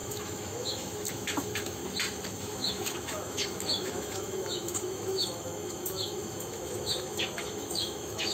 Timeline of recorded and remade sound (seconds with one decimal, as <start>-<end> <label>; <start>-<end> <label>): 0.0-1.8 remade; 1.8-2.4 recorded; 2.4-8.3 remade